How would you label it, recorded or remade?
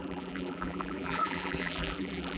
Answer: remade